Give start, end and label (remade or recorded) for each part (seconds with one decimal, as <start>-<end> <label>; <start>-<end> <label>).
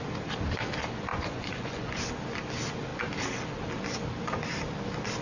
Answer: 0.0-1.1 recorded; 1.1-2.0 remade; 2.0-5.2 recorded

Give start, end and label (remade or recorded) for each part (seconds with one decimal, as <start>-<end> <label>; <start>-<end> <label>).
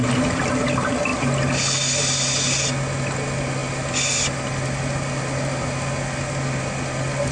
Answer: 0.0-7.3 recorded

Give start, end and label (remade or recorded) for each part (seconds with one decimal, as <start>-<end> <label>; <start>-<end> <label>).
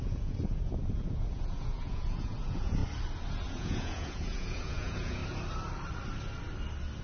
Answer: 0.0-2.8 remade; 2.8-3.3 recorded; 3.3-5.2 remade; 5.2-7.0 recorded